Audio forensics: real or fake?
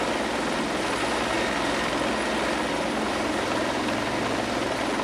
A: real